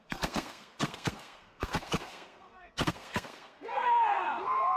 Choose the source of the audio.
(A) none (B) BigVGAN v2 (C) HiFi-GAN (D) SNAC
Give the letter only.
D